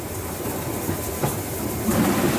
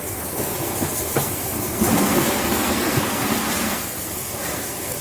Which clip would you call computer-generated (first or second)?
second